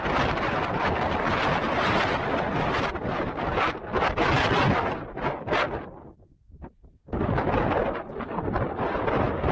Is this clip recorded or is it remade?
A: recorded